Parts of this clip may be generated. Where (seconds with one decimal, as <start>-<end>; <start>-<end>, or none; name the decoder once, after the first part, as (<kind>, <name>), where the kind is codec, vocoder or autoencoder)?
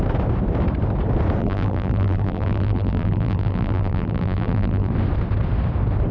1.4-4.9 (vocoder, BigVGAN v2)